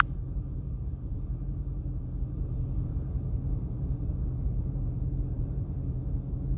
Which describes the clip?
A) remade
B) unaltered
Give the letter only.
A